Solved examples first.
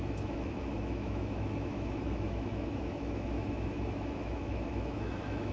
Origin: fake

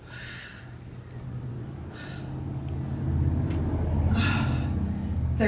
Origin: real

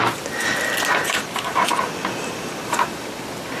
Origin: real